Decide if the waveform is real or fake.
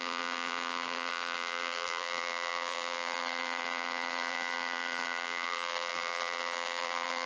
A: fake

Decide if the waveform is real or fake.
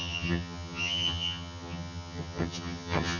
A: fake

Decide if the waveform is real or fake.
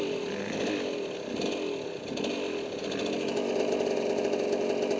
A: real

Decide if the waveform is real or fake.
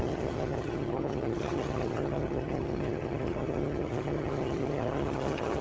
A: fake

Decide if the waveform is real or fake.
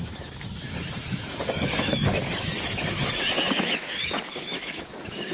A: fake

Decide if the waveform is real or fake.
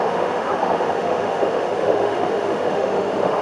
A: fake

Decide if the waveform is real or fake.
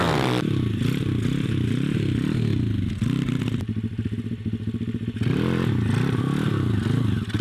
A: real